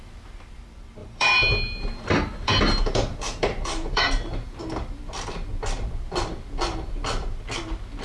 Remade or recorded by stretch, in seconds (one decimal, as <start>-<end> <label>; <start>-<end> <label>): 0.0-1.0 recorded; 1.0-4.6 remade; 4.6-8.0 recorded